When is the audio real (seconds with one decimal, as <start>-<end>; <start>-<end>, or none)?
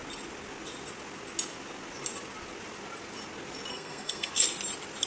0.0-3.7; 4.3-5.1